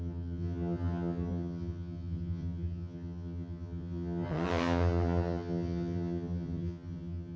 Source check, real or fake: fake